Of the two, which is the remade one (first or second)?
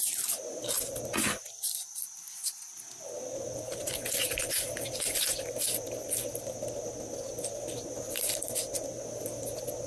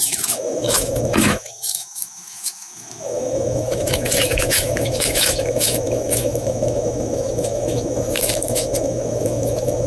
second